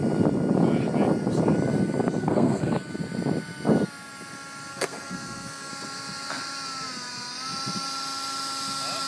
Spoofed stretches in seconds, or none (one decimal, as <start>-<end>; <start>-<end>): 2.2-2.7; 4.7-5.7